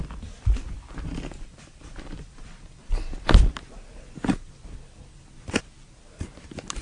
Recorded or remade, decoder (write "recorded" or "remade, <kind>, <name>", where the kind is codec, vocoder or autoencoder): remade, vocoder, BigVGAN v2